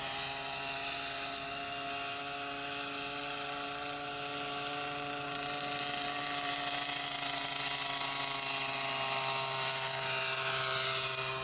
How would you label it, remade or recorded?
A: recorded